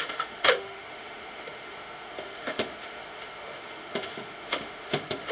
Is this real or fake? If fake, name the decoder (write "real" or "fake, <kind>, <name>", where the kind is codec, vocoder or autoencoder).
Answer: fake, autoencoder, DAC-VAE